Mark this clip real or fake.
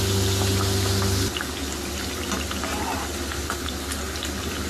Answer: real